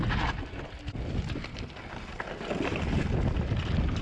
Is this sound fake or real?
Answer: real